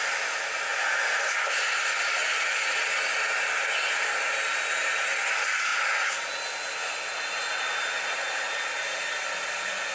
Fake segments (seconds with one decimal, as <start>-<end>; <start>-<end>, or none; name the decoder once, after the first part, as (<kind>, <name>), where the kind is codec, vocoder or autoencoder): 0.0-2.2 (vocoder, BigVGAN v2); 4.8-5.7; 8.8-9.9